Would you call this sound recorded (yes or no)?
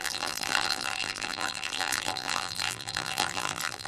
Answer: no